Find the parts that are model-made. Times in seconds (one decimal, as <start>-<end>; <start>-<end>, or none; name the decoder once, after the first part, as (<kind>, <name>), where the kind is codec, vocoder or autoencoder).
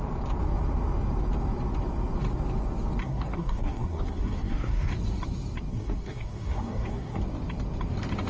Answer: 3.0-4.9 (codec, SNAC); 5.7-7.2